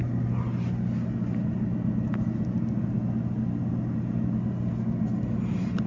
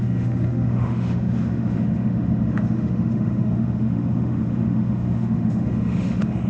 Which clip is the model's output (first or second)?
second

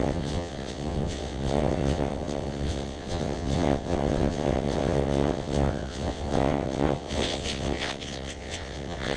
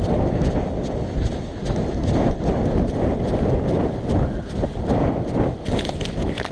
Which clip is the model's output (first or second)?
first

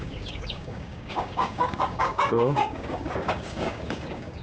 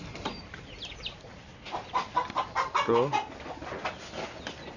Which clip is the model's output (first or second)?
first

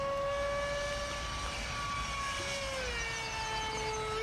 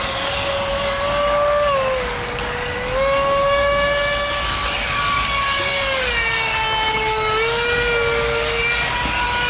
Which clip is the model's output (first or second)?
second